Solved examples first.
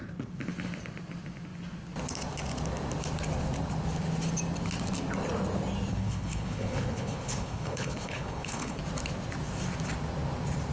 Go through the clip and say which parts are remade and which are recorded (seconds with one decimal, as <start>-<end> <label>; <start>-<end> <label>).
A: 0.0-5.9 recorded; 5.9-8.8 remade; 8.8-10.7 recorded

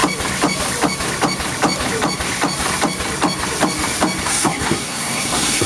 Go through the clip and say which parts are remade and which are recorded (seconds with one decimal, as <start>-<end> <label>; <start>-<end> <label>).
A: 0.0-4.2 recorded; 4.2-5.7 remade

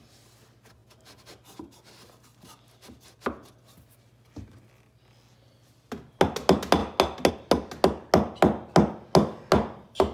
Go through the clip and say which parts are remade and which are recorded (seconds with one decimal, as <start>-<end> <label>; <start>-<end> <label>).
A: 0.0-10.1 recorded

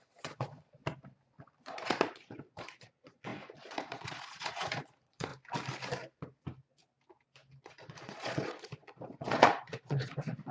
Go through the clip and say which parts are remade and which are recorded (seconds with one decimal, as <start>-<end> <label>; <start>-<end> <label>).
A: 0.0-0.8 remade; 0.8-1.6 recorded; 1.6-5.3 remade; 5.3-7.6 recorded; 7.6-10.5 remade